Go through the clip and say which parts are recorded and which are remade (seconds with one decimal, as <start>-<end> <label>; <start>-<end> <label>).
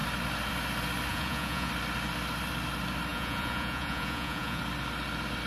0.0-1.1 recorded; 1.1-1.7 remade; 1.7-3.1 recorded; 3.1-4.6 remade; 4.6-5.5 recorded